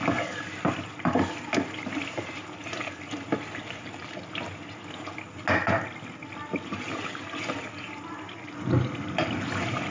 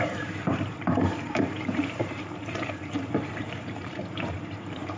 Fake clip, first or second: second